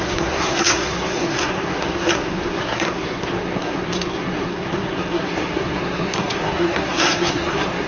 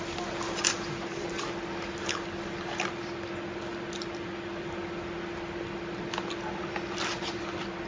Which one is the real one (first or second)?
second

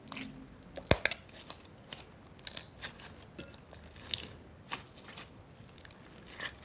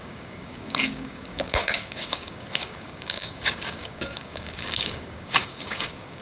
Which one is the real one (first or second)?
first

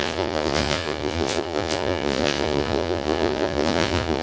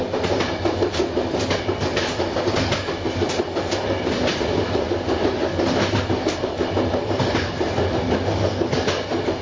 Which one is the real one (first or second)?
second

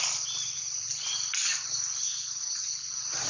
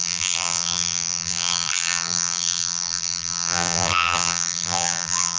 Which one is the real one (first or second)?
first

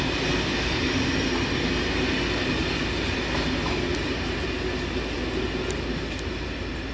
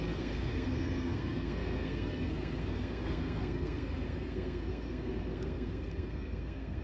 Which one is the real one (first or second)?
first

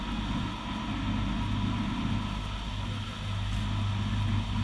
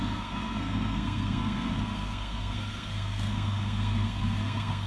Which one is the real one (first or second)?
first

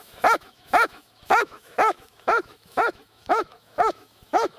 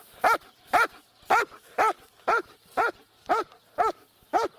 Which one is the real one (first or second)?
second